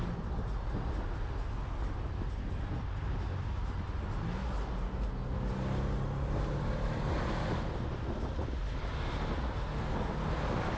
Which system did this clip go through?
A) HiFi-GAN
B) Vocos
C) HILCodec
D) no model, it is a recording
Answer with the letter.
D